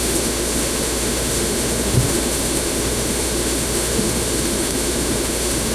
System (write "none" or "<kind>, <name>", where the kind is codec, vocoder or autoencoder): autoencoder, DAC-VAE